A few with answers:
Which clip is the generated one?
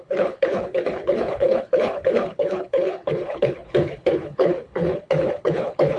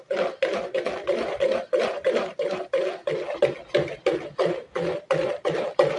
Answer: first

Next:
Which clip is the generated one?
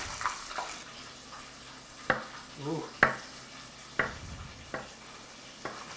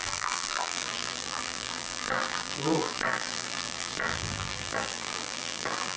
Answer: second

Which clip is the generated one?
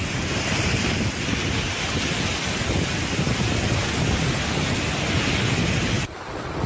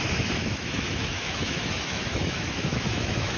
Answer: second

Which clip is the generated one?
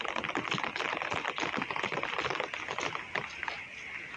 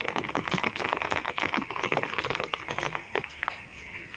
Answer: second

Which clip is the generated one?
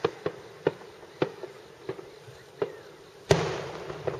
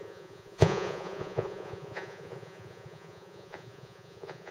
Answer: second